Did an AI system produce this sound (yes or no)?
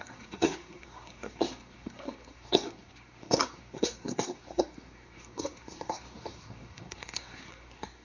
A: yes